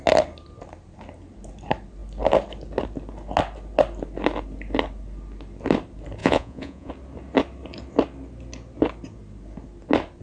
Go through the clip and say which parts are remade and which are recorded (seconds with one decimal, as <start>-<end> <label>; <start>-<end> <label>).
0.0-6.2 recorded; 6.2-6.9 remade; 6.9-10.2 recorded